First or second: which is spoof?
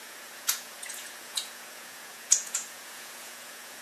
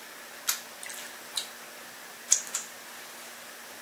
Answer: first